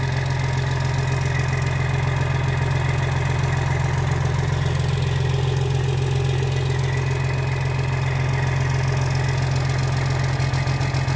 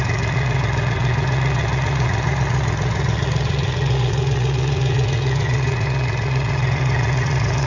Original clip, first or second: first